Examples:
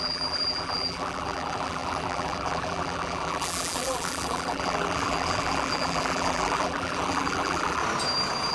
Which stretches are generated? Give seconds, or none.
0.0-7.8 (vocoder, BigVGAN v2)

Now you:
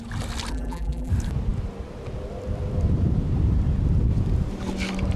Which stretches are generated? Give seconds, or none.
0.5-1.1 (vocoder, BigVGAN v2)

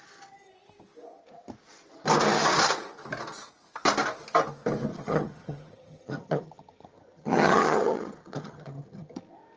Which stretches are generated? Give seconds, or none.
4.9-9.2 (vocoder, HiFi-GAN)